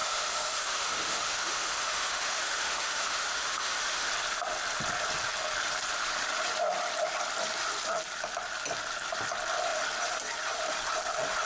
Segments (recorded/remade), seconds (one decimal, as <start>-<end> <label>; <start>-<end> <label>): 0.0-4.1 remade; 4.1-11.4 recorded